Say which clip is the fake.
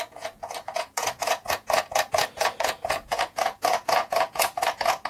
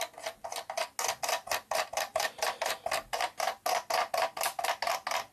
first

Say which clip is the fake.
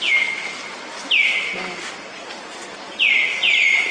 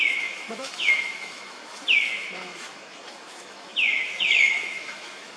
second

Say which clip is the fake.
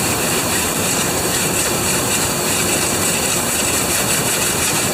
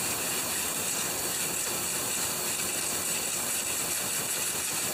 first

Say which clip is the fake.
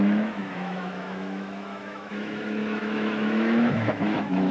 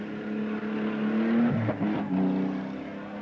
first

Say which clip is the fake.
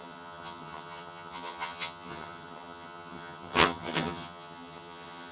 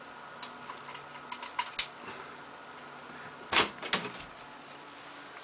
first